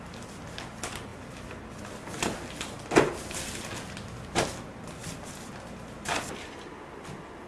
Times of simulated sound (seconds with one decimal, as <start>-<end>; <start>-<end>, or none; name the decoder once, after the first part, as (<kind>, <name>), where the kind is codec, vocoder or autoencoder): none